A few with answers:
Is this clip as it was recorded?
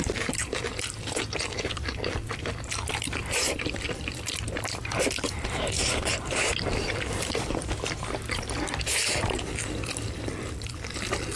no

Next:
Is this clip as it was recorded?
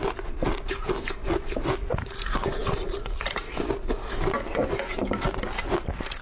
yes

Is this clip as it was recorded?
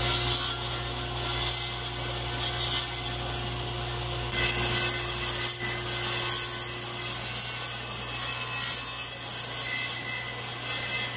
yes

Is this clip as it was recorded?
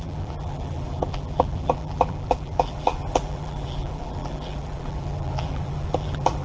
no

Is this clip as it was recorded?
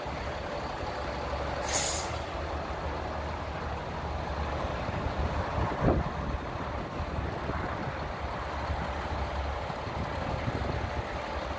yes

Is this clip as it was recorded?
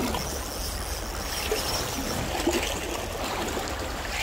yes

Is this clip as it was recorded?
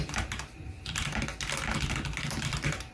no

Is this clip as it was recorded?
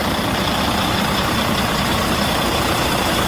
no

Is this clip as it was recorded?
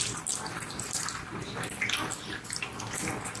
yes